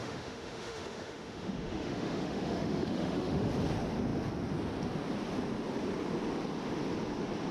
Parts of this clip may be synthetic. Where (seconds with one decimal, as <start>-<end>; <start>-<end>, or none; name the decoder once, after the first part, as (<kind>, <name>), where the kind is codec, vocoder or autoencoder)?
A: 0.0-3.5 (autoencoder, DAC-VAE)